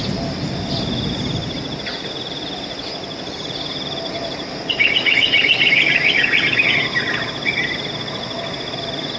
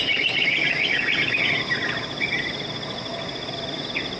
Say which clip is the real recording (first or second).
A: first